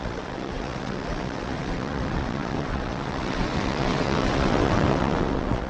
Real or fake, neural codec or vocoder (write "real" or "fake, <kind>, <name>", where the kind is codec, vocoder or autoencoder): fake, vocoder, WaveNeXt